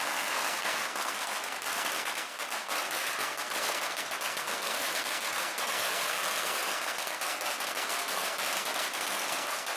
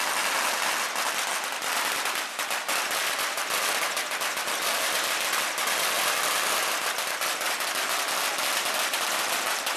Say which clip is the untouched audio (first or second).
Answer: second